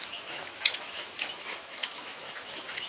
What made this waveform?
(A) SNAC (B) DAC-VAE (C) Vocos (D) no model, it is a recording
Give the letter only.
B